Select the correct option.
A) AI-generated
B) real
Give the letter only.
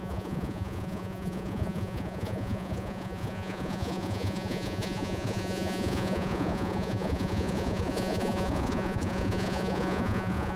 A